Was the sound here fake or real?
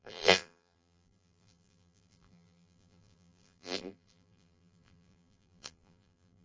fake